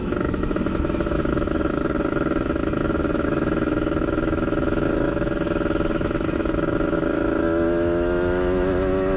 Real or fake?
fake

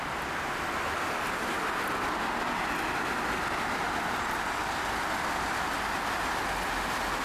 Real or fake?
real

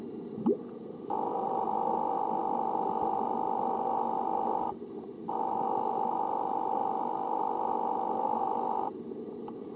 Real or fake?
real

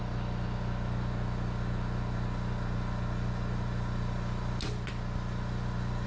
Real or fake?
real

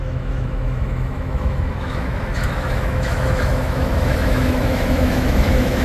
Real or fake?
fake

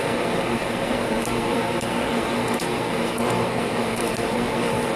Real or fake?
fake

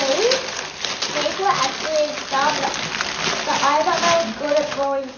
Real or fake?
real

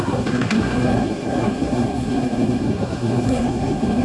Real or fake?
fake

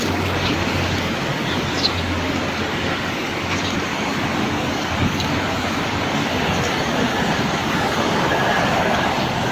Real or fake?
fake